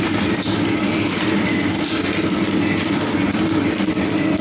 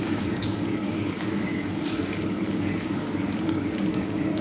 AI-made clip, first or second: second